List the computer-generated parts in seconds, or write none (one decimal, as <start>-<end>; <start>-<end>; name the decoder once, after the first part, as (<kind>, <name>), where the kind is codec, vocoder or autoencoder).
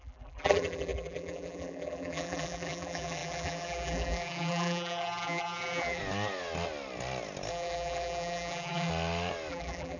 0.0-6.0 (vocoder, BigVGAN v2); 7.5-8.9; 9.5-10.0